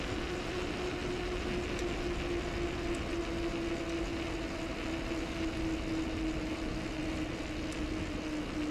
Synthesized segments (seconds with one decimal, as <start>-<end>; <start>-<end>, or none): none